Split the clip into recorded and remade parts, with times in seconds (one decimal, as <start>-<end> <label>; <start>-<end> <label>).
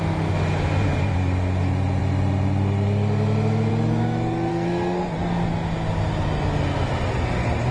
0.0-4.5 recorded; 4.5-5.1 remade; 5.1-7.7 recorded